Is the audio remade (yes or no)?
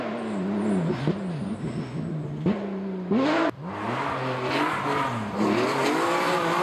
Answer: no